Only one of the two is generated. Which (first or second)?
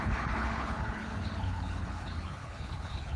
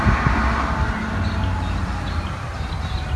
first